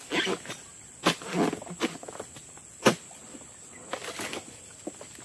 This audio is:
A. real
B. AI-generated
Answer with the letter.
A